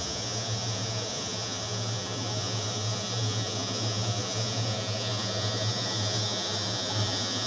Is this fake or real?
fake